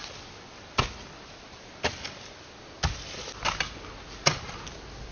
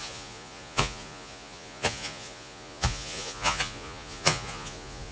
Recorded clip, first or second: first